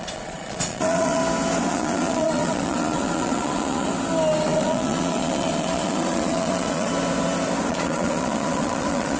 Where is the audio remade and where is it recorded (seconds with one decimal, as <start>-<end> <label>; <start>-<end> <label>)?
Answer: 0.0-1.2 remade; 1.2-1.7 recorded; 1.7-3.9 remade; 3.9-4.4 recorded; 4.4-6.9 remade; 6.9-7.7 recorded; 7.7-9.2 remade